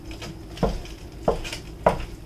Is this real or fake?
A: real